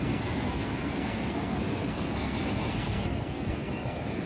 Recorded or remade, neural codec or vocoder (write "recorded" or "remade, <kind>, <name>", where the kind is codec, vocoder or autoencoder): remade, codec, SNAC